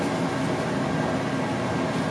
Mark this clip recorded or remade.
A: recorded